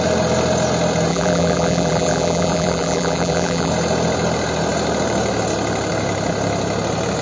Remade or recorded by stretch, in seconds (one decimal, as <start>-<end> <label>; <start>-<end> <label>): 0.0-1.1 recorded; 1.1-3.7 remade; 3.7-7.2 recorded